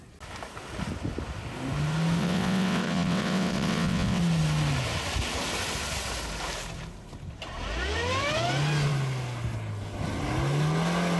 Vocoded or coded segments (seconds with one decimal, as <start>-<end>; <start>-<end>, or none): 2.2-4.2